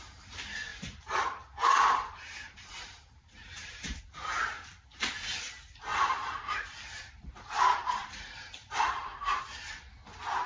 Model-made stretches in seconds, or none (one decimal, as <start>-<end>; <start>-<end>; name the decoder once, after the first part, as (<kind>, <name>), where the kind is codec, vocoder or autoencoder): 0.7-4.0 (vocoder, BigVGAN v2); 5.9-9.4